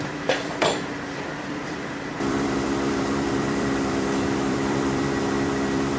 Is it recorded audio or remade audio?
remade